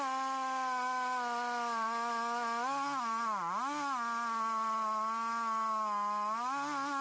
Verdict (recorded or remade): recorded